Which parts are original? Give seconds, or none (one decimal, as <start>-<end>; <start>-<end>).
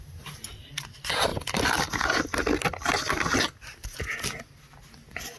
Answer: 0.0-5.4